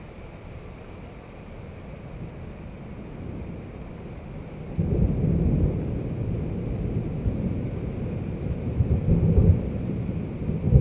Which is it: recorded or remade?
recorded